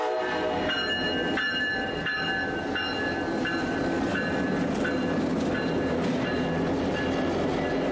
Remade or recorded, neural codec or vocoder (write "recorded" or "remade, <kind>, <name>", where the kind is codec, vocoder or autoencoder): recorded